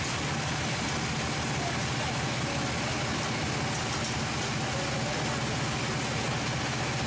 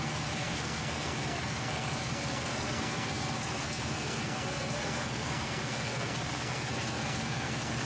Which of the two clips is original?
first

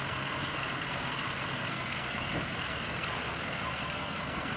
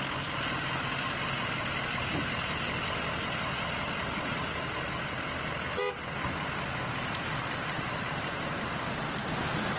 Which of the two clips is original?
second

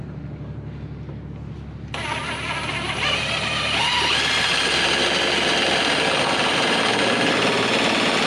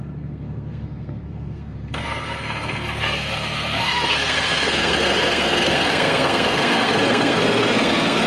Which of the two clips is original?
first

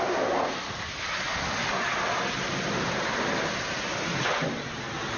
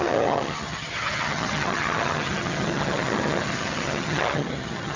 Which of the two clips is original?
first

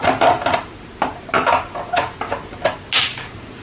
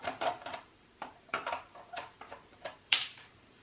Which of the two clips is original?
first